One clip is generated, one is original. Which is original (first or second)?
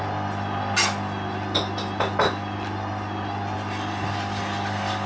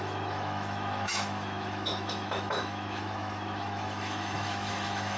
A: first